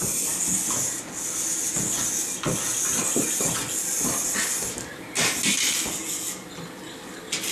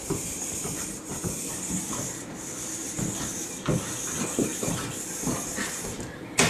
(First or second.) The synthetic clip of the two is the second